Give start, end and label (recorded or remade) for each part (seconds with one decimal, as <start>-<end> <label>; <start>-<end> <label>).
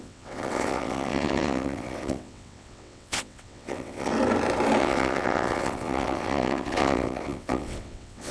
0.0-4.1 remade; 4.1-4.8 recorded; 4.8-8.3 remade